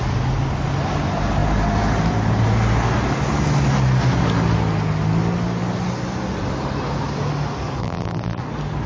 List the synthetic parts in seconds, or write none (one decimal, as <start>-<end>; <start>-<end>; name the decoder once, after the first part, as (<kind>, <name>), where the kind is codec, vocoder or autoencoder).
7.8-8.4 (vocoder, BigVGAN v2)